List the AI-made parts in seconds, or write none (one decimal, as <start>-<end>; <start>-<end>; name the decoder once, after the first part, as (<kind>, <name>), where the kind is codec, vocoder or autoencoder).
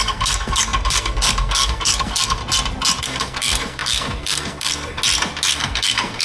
0.0-2.4 (codec, SNAC); 3.0-5.0; 5.5-6.2